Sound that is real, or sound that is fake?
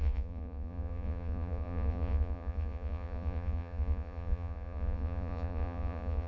fake